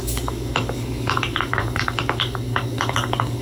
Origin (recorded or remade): remade